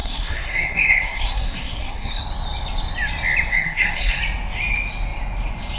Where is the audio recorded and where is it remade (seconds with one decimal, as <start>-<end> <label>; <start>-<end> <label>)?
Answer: 0.0-2.2 remade; 2.2-3.5 recorded; 3.5-4.2 remade; 4.2-5.8 recorded